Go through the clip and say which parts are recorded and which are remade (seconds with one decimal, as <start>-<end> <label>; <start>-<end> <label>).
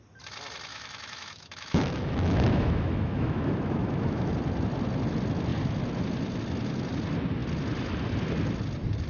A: 0.0-0.7 recorded; 0.7-4.3 remade; 4.3-9.1 recorded